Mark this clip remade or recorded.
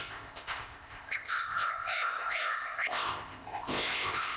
remade